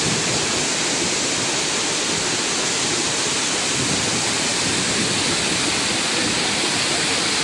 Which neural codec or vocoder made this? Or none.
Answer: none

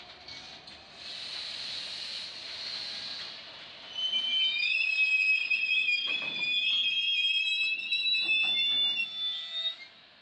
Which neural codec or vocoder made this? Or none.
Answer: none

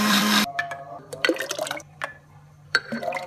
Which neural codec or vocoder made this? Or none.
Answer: vocoder, BigVGAN v2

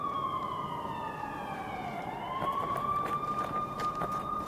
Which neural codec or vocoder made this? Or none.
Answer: vocoder, BigVGAN v2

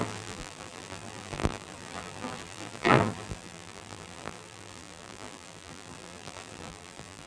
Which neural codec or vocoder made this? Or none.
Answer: vocoder, BigVGAN v2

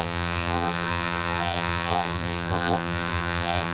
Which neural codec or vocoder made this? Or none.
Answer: vocoder, BigVGAN v2